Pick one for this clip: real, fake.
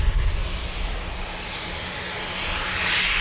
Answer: real